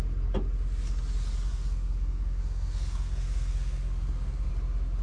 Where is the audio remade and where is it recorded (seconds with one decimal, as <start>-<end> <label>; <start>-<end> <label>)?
0.0-1.5 recorded; 1.5-4.5 remade; 4.5-5.0 recorded